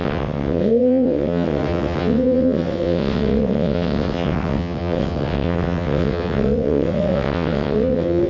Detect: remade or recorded remade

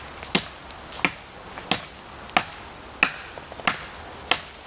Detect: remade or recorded recorded